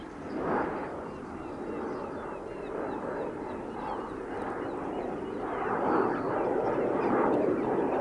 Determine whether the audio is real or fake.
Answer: real